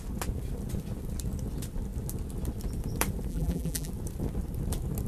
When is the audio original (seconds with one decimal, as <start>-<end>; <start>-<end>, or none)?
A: 0.0-3.3; 3.9-5.1

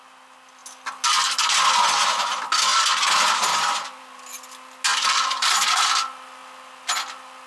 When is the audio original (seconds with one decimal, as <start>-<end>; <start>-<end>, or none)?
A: 0.0-4.9; 5.5-7.5

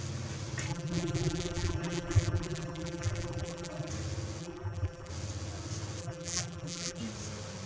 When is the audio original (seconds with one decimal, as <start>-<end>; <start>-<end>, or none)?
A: 0.0-0.7; 3.9-4.4; 5.1-6.0; 7.0-7.7

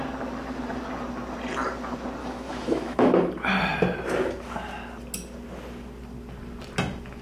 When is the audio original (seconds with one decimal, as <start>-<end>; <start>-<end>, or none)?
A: 0.0-2.2; 3.3-7.2

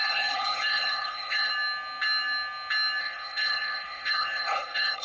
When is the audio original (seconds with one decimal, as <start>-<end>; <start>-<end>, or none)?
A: 1.5-3.0